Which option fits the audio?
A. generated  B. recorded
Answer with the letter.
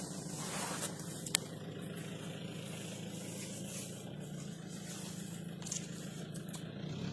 B